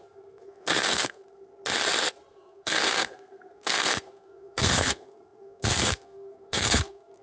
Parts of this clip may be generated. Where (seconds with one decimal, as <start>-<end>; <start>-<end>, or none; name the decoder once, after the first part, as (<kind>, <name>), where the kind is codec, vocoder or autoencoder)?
0.0-1.5 (codec, SNAC); 2.3-7.2